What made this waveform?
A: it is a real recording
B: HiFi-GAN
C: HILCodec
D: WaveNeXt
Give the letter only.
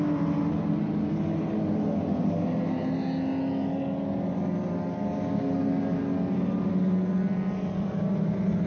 A